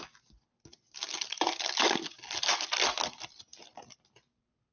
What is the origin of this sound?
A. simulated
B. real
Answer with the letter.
B